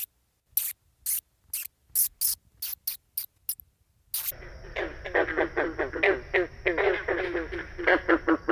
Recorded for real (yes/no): yes